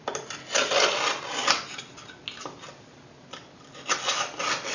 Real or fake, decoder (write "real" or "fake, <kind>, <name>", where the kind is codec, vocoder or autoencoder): real